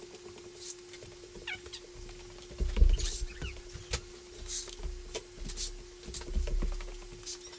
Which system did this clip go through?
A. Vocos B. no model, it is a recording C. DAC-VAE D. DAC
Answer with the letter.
B